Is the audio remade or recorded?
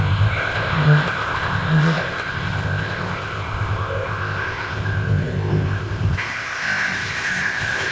remade